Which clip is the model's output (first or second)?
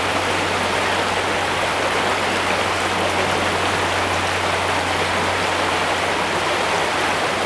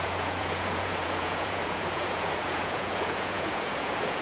second